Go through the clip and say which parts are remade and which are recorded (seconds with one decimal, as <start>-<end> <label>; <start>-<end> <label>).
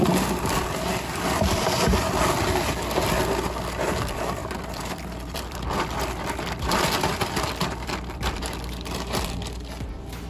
0.0-4.4 recorded; 4.4-8.9 remade; 8.9-10.3 recorded